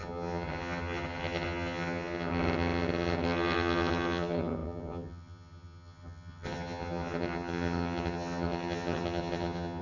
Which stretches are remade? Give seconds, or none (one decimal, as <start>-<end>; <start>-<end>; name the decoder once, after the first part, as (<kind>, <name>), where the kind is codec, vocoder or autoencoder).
0.0-9.8 (vocoder, HiFi-GAN)